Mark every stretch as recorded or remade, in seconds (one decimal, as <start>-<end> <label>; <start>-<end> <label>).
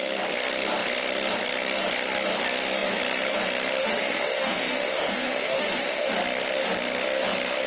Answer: 0.0-3.8 recorded; 3.8-6.1 remade; 6.1-7.7 recorded